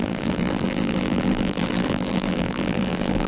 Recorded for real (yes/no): no